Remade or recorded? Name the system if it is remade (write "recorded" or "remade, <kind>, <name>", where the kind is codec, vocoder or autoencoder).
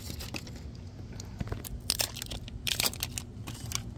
recorded